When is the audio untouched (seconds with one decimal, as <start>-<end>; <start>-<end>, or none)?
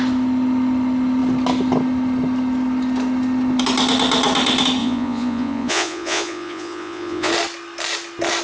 0.0-4.8; 7.3-8.4